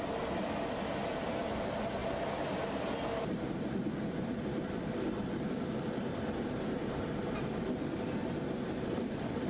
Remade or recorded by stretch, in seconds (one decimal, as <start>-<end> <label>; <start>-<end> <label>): 0.0-9.5 recorded